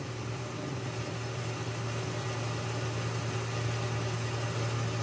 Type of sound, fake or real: real